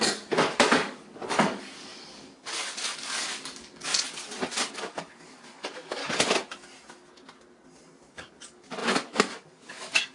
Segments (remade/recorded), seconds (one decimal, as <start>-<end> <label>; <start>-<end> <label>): 0.0-3.9 remade; 3.9-4.6 recorded; 4.6-6.0 remade; 6.0-8.1 recorded; 8.1-10.1 remade